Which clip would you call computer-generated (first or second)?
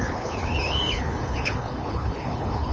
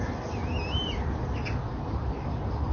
first